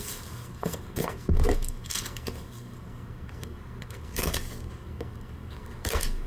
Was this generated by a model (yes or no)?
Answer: yes